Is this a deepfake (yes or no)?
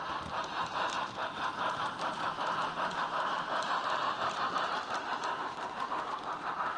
yes